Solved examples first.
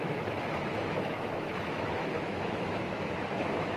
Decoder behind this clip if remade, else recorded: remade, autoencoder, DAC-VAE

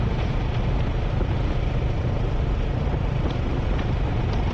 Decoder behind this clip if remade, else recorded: recorded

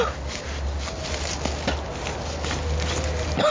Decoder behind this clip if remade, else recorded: recorded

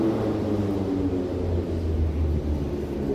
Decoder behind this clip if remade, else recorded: recorded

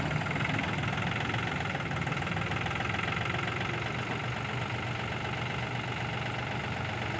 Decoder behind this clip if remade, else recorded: recorded